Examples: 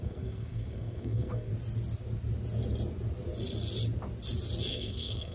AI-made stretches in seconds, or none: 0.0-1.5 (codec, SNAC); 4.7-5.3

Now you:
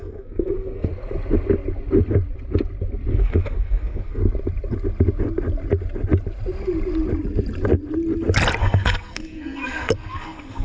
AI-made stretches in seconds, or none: 0.0-0.9 (codec, SNAC); 3.1-4.2; 8.6-10.6

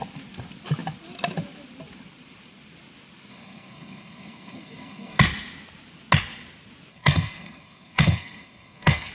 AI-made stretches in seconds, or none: 3.3-5.2 (codec, SNAC); 6.9-9.1